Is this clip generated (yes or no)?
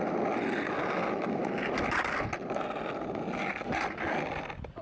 no